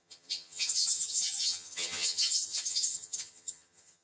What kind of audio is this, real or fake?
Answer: fake